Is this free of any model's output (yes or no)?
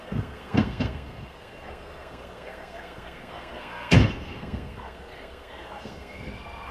no